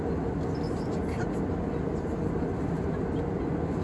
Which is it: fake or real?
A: real